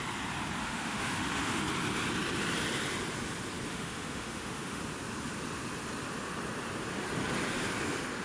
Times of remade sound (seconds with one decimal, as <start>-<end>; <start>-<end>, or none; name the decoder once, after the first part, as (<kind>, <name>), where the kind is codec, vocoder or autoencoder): 0.6-1.6 (autoencoder, DAC-VAE); 3.7-4.8